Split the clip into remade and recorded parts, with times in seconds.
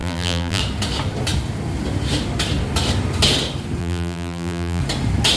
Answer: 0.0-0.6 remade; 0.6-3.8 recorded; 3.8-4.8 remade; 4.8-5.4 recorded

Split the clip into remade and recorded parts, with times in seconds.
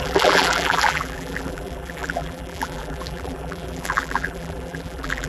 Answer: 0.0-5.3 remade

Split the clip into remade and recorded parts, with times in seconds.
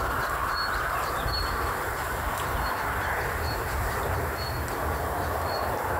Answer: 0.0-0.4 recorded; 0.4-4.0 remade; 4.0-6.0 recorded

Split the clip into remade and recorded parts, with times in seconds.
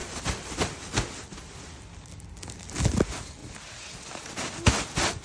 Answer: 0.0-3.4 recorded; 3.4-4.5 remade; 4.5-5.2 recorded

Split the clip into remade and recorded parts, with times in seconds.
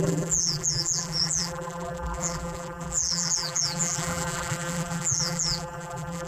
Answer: 0.0-6.3 remade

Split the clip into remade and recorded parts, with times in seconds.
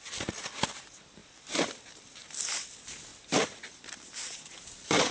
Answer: 0.0-1.2 recorded; 1.2-2.3 remade; 2.3-3.1 recorded; 3.1-4.5 remade; 4.5-5.1 recorded